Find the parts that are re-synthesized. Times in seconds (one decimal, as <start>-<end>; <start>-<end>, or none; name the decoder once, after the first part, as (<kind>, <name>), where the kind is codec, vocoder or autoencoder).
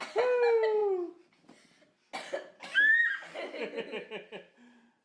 none